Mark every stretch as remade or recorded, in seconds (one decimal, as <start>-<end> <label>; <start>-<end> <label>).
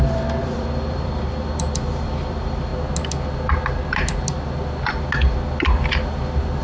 0.0-2.7 remade; 2.7-6.6 recorded